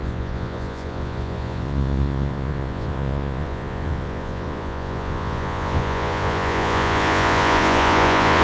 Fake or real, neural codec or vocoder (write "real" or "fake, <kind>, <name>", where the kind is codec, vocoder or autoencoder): fake, vocoder, Vocos